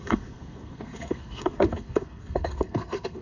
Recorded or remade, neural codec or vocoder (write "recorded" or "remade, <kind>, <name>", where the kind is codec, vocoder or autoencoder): remade, codec, SNAC